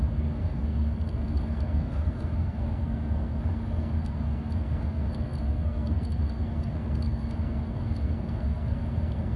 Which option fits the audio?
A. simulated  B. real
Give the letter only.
A